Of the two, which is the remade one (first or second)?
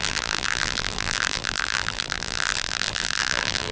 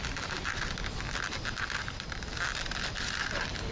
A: first